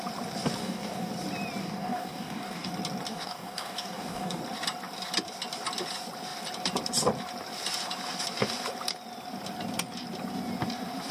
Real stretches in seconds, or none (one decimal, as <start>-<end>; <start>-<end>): 0.0-0.6; 1.1-1.6; 2.7-3.1; 4.4-11.1